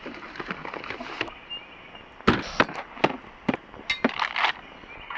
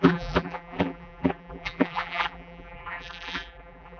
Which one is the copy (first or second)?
second